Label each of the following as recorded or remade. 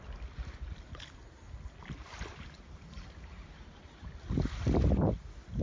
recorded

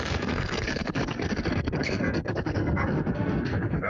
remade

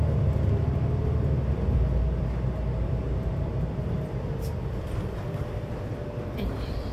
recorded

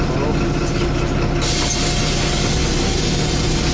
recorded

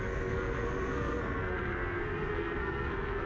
remade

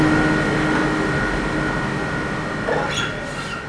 recorded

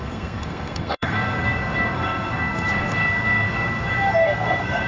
remade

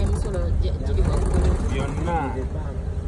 recorded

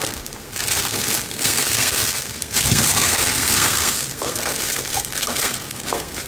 remade